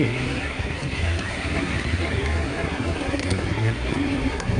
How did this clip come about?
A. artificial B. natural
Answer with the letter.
A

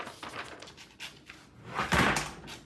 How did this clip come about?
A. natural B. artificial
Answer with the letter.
A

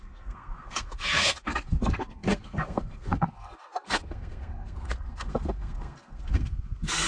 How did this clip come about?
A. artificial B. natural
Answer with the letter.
A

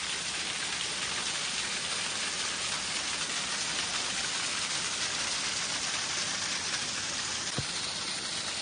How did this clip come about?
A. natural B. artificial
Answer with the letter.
A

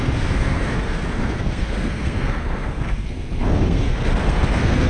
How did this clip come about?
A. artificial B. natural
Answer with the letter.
A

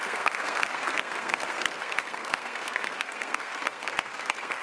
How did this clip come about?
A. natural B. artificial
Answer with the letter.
B